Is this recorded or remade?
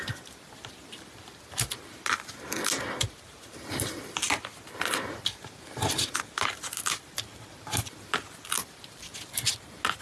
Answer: recorded